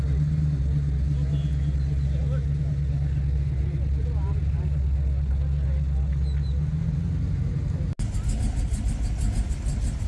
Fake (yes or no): no